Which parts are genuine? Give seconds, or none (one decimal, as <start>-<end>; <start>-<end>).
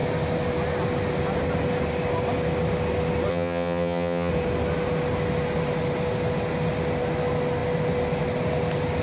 0.0-3.3; 4.3-9.0